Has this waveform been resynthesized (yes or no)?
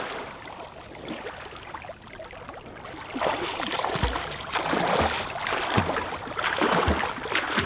no